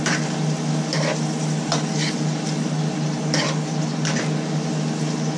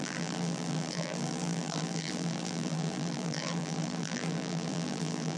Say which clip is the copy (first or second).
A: second